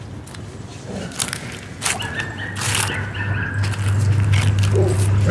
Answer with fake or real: real